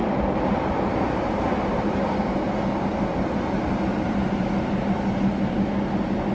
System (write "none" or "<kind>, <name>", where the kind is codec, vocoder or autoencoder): none